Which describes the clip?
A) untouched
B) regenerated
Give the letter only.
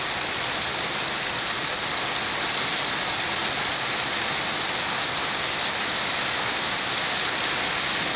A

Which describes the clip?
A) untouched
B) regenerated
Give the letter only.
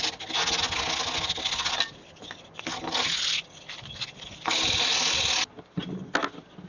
A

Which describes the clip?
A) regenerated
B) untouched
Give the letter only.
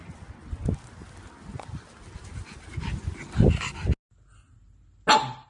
B